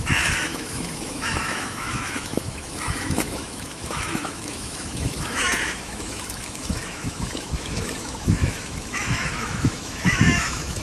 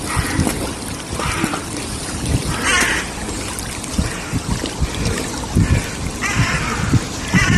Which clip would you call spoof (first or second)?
first